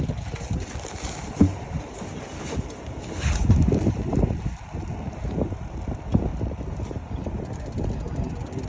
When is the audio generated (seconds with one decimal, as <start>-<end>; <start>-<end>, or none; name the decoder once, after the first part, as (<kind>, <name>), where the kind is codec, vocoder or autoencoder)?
none

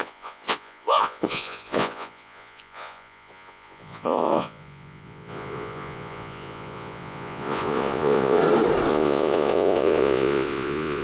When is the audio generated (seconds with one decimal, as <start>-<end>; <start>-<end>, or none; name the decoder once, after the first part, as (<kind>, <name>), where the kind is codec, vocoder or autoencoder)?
0.0-8.4 (vocoder, Vocos); 8.9-11.0

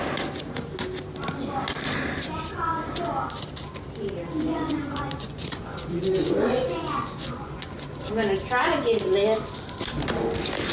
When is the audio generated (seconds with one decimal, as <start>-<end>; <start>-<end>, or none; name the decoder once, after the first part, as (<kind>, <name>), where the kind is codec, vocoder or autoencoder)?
4.5-8.1 (vocoder, Vocos)

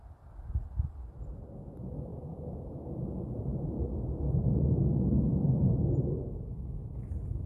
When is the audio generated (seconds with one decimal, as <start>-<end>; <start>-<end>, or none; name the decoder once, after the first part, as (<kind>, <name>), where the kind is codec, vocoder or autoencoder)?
2.1-3.0 (vocoder, Vocos); 3.5-4.2

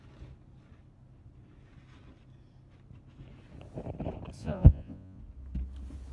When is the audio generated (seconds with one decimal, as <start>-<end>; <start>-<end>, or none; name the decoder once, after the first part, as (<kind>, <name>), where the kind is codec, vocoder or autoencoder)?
4.4-5.2 (vocoder, Vocos)